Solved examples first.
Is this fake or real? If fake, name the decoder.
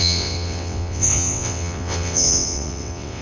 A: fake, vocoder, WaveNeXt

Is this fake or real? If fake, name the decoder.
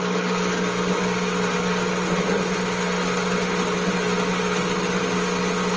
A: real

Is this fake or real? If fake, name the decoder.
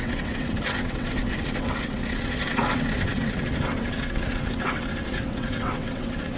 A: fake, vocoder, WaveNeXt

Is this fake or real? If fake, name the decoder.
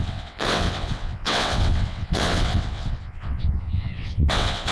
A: fake, vocoder, WaveNeXt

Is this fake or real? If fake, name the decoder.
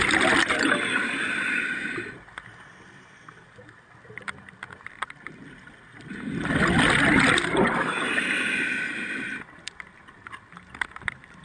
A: real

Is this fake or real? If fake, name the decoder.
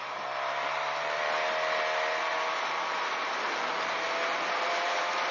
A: real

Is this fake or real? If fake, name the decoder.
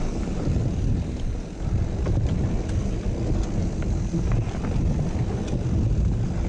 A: real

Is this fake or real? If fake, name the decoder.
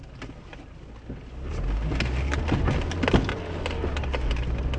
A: real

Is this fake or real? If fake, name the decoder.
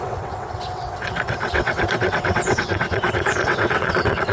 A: fake, vocoder, WaveNeXt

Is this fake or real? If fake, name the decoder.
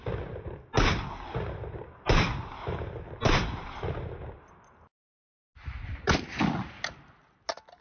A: real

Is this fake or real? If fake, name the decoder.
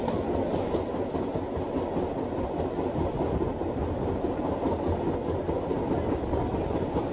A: real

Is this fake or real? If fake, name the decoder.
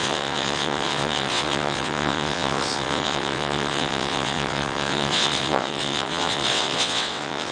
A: fake, vocoder, WaveNeXt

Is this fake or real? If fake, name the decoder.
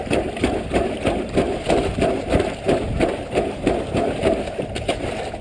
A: real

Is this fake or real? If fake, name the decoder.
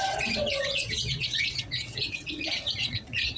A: fake, vocoder, WaveNeXt